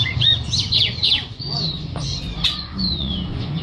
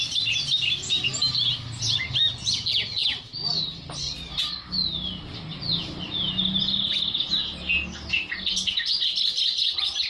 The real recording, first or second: second